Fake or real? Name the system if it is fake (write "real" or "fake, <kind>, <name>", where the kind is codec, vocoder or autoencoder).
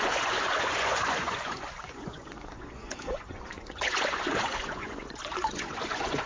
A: fake, vocoder, Vocos